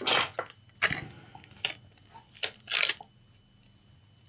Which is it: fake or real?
real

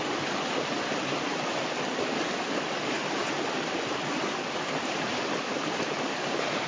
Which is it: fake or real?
fake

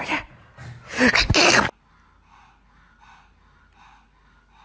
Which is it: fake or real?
real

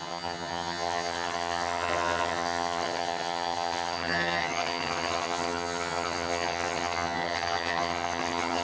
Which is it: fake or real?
fake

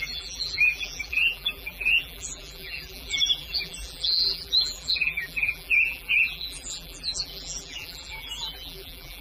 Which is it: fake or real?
fake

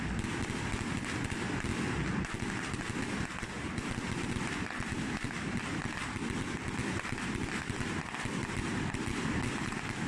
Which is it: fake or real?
real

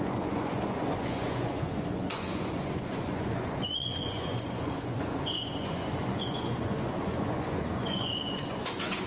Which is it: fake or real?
fake